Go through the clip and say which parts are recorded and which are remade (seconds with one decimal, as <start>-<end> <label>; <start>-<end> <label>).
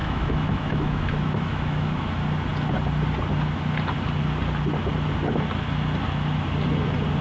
0.0-2.1 remade; 2.1-7.2 recorded